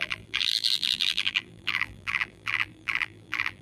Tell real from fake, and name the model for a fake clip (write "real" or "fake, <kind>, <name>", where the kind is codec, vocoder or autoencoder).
fake, vocoder, BigVGAN v2